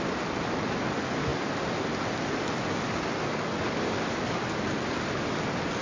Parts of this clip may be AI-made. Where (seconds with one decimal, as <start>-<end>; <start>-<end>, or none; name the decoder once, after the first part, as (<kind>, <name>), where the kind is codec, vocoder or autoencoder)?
none